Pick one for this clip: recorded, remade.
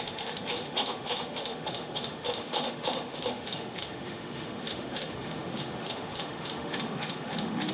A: remade